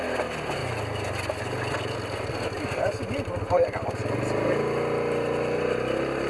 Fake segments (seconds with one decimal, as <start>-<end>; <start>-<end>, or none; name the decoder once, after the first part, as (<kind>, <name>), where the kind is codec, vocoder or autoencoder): none